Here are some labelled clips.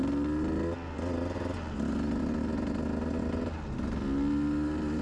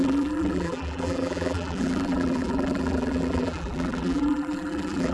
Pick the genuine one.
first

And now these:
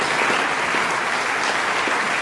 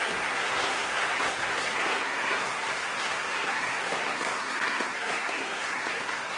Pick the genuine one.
first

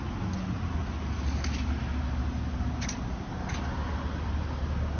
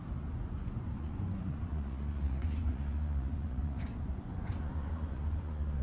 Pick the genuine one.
first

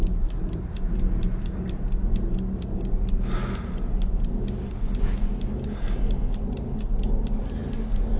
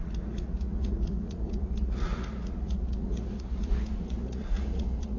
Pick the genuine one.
first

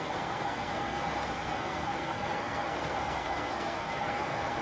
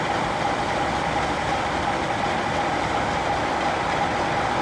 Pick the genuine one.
second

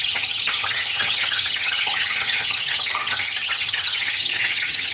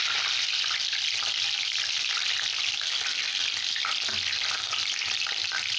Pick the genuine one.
second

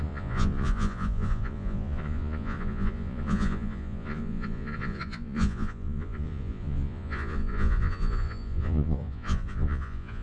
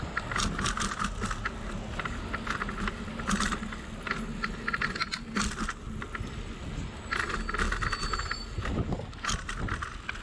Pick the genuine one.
second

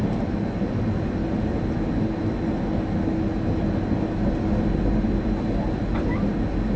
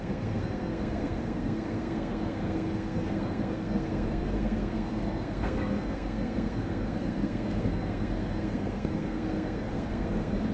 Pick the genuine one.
first